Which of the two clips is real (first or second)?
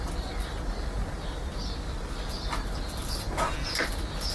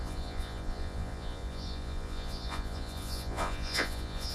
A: first